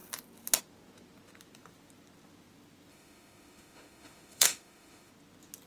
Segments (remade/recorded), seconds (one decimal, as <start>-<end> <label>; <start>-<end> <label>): 0.0-2.9 recorded; 2.9-5.1 remade; 5.1-5.7 recorded